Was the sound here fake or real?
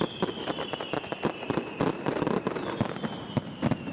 fake